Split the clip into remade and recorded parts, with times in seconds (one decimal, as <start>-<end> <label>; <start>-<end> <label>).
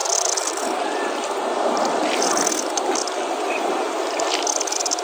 0.0-3.0 recorded; 3.0-3.7 remade; 3.7-5.0 recorded